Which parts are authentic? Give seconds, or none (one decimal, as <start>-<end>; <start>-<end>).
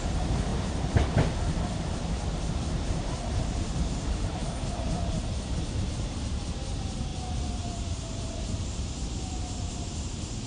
0.5-2.5